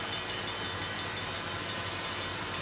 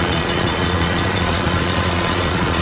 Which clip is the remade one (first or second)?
second